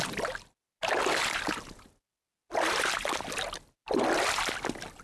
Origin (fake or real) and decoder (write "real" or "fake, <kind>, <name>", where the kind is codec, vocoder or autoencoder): real